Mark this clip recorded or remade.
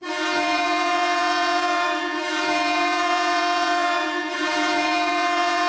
remade